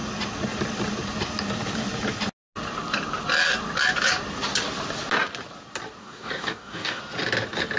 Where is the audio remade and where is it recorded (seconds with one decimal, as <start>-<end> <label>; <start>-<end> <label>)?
0.0-6.0 recorded; 6.0-7.0 remade; 7.0-7.8 recorded